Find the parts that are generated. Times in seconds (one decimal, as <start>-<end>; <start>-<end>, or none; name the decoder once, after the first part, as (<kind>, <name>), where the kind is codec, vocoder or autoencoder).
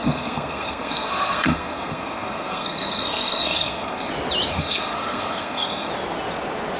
0.0-4.1 (codec, SNAC); 4.5-5.9